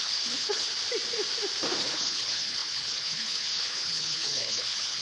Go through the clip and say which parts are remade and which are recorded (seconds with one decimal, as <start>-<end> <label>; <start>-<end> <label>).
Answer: 0.0-0.7 remade; 0.7-1.8 recorded; 1.8-5.0 remade

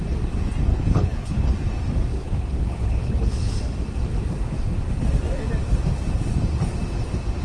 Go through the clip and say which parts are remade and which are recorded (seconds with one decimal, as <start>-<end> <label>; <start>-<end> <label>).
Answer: 0.0-0.7 recorded; 0.7-1.5 remade; 1.5-2.1 recorded; 2.1-3.5 remade; 3.5-7.4 recorded